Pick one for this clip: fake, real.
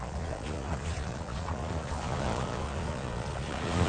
fake